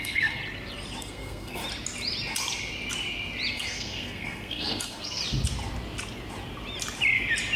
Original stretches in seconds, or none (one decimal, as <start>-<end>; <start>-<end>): 0.4-1.0; 1.6-3.5; 5.2-7.6